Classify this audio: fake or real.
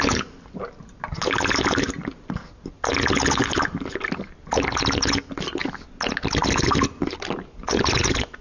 real